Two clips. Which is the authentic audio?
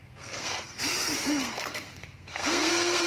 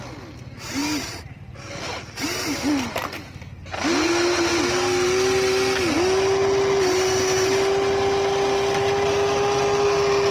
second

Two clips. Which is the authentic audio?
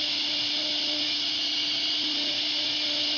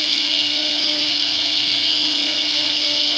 first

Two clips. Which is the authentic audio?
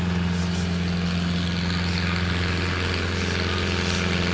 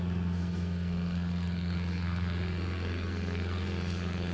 first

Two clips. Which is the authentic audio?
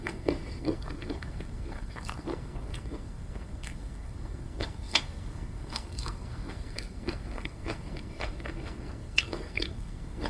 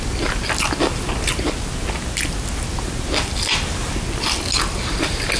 second